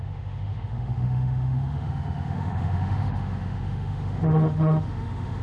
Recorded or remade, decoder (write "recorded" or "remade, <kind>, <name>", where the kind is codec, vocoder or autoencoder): remade, autoencoder, DAC-VAE